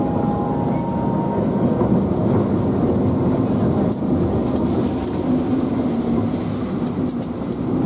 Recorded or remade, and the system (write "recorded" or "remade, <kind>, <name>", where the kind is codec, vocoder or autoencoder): recorded